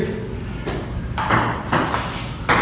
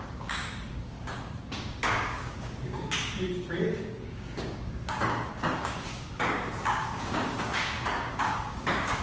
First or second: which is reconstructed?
second